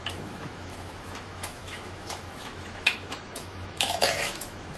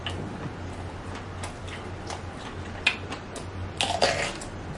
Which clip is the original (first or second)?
second